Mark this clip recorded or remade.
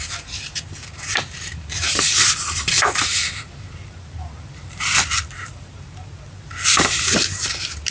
remade